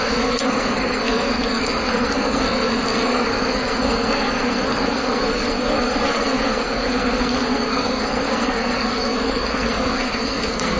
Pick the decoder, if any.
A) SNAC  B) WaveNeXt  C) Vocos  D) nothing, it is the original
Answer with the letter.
A